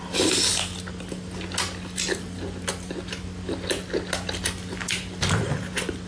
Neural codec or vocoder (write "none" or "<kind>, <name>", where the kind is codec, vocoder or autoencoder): none